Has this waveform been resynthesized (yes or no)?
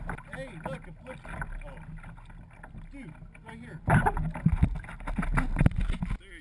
no